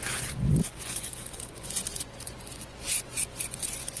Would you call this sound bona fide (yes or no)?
no